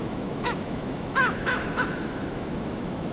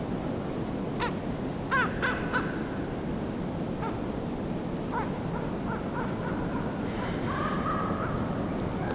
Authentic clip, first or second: second